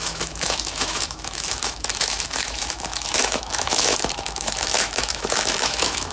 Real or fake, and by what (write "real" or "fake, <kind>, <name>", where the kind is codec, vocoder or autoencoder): fake, autoencoder, DAC-VAE